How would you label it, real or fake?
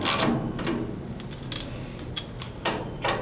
real